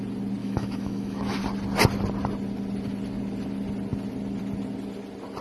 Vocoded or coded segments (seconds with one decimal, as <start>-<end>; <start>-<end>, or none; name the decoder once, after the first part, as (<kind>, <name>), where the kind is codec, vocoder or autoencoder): 0.4-1.4 (autoencoder, DAC-VAE)